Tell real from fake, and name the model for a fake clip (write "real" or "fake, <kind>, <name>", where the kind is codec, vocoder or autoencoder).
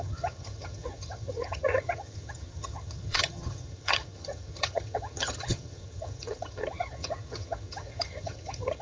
fake, vocoder, HiFi-GAN